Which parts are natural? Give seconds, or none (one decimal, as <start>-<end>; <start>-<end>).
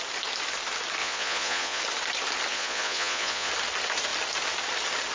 0.0-1.0; 1.8-2.5; 3.5-5.1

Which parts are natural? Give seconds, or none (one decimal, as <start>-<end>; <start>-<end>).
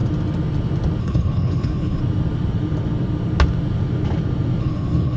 0.0-1.0; 2.0-4.6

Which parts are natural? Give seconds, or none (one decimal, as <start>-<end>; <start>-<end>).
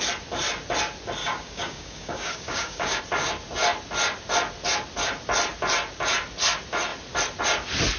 0.0-1.2; 3.0-8.0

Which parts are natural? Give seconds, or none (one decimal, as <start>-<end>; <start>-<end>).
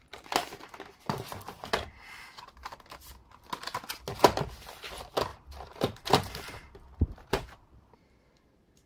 0.0-5.3; 7.9-8.9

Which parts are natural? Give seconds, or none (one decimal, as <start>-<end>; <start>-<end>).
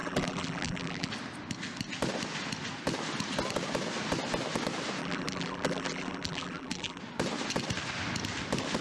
1.1-5.0; 7.0-8.8